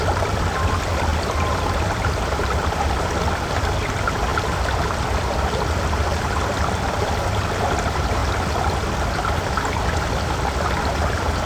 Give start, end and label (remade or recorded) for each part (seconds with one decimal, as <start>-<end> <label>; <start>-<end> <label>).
0.0-4.3 remade; 4.3-7.0 recorded; 7.0-8.2 remade; 8.2-9.4 recorded; 9.4-11.5 remade